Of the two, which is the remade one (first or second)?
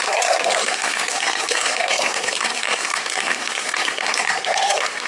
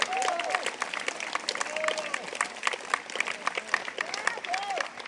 first